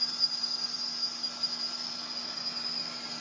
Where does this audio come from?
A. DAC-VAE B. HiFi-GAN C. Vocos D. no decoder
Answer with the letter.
D